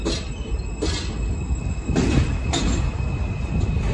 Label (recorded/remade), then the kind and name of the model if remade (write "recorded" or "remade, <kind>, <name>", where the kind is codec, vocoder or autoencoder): recorded